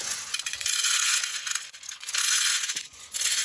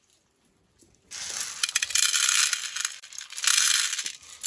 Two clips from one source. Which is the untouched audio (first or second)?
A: second